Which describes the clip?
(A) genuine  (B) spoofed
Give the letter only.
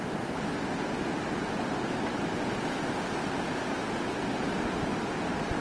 A